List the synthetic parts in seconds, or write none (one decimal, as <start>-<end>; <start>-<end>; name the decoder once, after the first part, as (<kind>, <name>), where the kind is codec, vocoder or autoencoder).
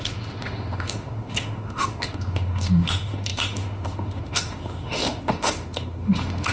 0.0-6.5 (autoencoder, DAC-VAE)